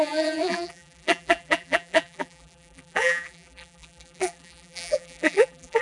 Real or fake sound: fake